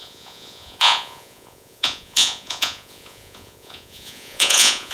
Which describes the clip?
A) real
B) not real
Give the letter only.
B